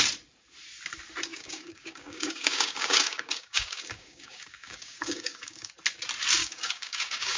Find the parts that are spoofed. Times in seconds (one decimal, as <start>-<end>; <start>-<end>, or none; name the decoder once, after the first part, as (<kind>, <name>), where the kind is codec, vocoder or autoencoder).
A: 1.3-5.7 (codec, DAC); 6.4-7.4